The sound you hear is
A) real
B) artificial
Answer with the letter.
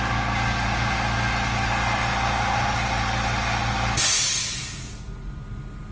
A